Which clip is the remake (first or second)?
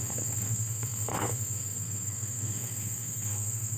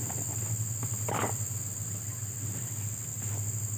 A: first